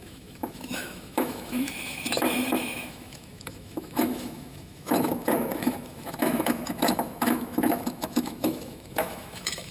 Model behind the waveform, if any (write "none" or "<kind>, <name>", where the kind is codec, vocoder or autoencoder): autoencoder, DAC-VAE